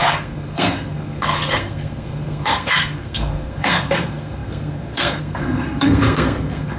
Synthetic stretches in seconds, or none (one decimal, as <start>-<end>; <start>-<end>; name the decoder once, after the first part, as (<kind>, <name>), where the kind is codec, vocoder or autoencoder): 0.0-6.8 (codec, SNAC)